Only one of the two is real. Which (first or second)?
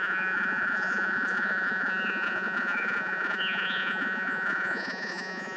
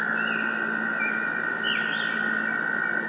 second